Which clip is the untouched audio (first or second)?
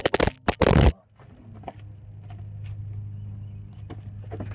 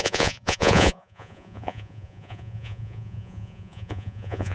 first